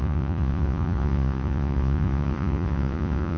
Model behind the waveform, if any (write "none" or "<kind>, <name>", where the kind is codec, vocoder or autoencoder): vocoder, Vocos